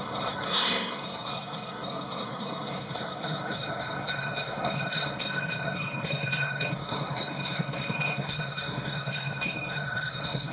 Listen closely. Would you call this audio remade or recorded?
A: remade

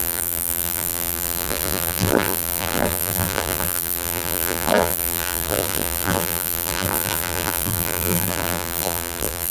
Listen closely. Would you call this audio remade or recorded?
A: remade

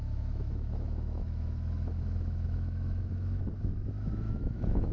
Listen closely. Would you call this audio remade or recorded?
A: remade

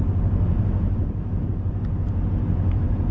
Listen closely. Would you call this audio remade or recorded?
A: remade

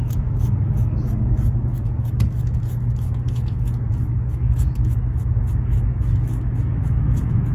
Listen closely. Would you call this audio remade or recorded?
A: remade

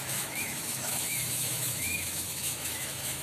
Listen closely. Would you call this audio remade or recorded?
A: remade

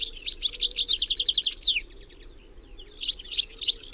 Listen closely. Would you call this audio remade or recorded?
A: recorded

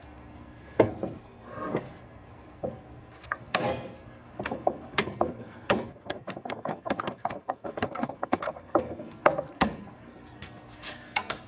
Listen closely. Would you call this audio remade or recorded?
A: remade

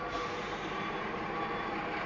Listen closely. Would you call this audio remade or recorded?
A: remade